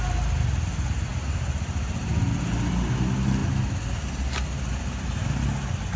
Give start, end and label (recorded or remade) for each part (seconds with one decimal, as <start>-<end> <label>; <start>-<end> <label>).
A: 0.0-6.0 recorded